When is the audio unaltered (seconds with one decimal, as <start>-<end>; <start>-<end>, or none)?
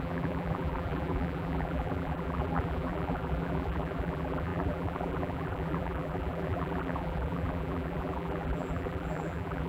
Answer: none